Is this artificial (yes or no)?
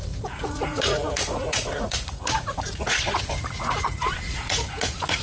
yes